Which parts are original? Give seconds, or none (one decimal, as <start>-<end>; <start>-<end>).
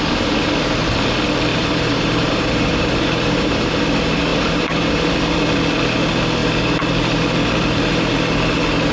0.0-1.5; 3.7-4.3; 5.1-8.9